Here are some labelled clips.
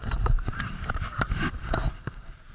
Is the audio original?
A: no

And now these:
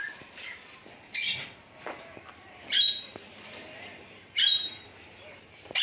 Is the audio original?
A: no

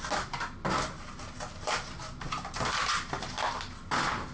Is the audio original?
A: yes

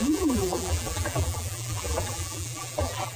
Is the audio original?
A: no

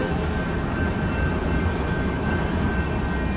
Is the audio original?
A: yes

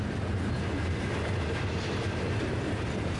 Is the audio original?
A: yes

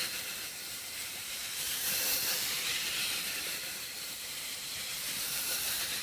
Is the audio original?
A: no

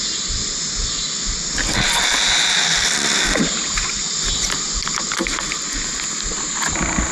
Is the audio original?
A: yes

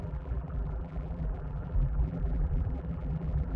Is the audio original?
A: no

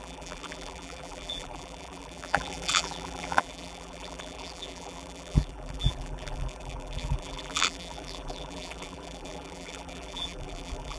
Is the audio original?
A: no